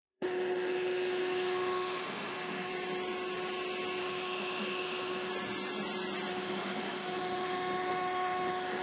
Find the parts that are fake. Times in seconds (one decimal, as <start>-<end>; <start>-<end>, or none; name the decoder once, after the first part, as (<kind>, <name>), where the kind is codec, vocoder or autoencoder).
0.0-2.7 (autoencoder, DAC-VAE); 4.0-5.3; 6.3-8.8